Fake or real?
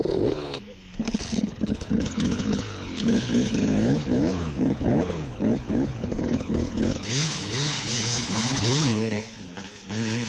fake